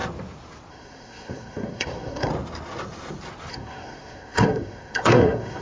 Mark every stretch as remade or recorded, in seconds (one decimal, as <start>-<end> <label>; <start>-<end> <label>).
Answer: 0.0-0.7 recorded; 0.7-2.3 remade; 2.3-3.5 recorded; 3.5-5.6 remade

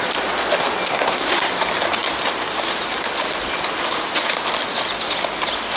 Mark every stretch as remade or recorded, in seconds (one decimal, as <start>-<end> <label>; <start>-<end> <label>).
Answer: 0.0-0.9 recorded; 0.9-1.5 remade; 1.5-5.8 recorded

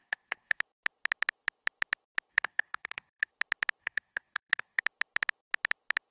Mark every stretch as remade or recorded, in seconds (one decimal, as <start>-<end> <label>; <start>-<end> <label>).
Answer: 0.0-0.6 remade; 0.6-2.3 recorded; 2.3-3.3 remade; 3.3-3.8 recorded; 3.8-4.8 remade; 4.8-6.1 recorded